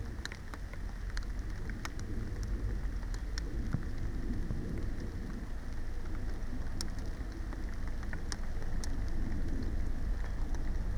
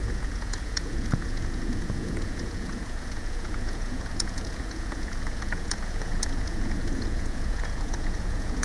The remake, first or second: second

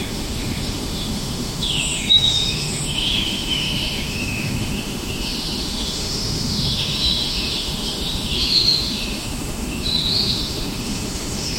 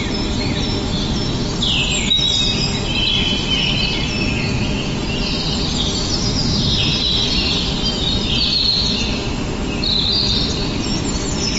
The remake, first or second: first